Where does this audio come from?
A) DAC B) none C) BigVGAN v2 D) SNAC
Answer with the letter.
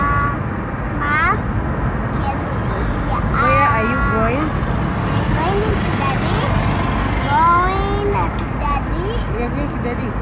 B